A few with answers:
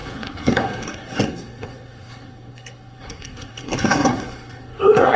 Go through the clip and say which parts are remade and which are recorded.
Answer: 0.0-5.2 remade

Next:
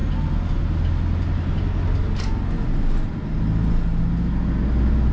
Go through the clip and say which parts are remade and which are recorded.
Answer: 0.0-5.1 recorded

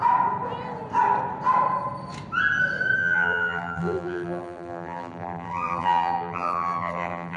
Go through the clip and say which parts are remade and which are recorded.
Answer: 0.0-3.0 recorded; 3.0-7.4 remade